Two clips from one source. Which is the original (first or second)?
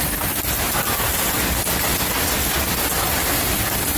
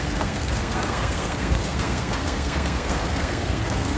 first